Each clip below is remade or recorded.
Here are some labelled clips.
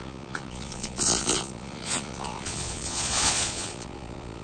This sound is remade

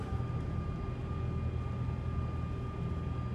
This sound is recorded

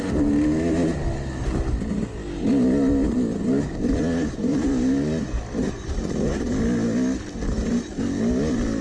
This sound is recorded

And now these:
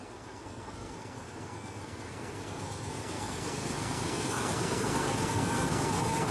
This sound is remade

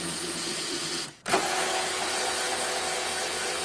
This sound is remade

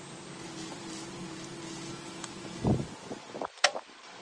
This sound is recorded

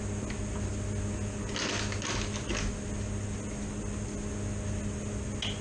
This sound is recorded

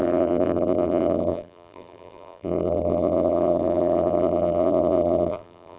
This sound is remade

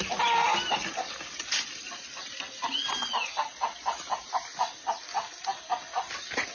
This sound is recorded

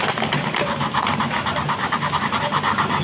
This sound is recorded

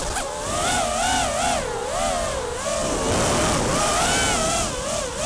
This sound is recorded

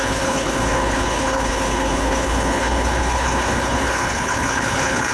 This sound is remade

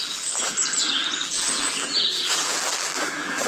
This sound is remade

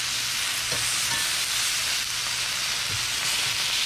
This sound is recorded